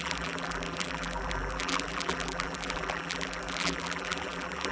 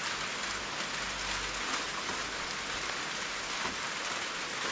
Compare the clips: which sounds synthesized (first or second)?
first